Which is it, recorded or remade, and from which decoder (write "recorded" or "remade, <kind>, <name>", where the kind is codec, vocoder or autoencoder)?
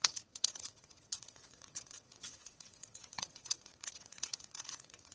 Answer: remade, vocoder, WaveNeXt